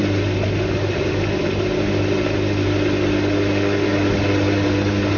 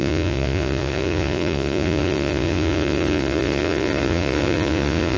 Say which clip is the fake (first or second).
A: second